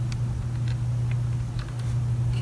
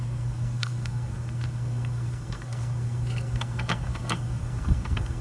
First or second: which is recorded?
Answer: first